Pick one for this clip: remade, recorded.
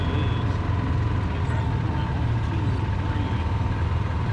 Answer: recorded